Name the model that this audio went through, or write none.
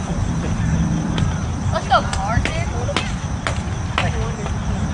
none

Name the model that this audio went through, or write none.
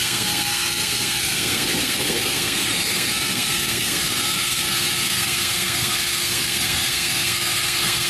codec, SNAC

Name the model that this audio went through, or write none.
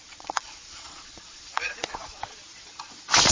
vocoder, Vocos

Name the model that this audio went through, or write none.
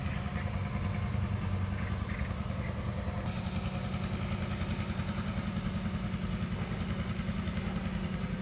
none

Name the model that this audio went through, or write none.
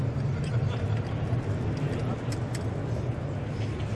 none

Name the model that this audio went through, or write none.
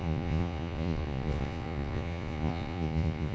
vocoder, Vocos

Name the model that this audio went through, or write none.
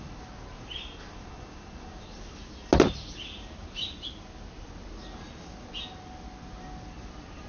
none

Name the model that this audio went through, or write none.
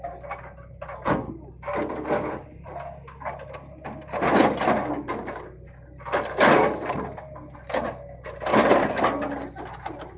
none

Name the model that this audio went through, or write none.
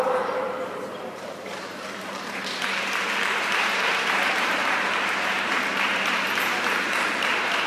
vocoder, BigVGAN v2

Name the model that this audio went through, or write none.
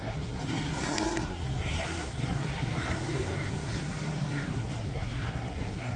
codec, SNAC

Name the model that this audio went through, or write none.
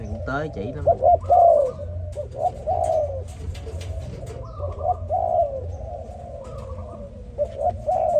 none